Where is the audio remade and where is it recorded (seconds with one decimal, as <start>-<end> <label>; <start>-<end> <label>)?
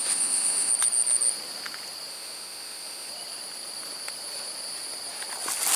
0.0-0.7 remade; 0.7-2.1 recorded; 2.1-3.1 remade; 3.1-5.8 recorded